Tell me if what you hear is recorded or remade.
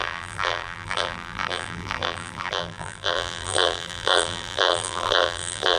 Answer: remade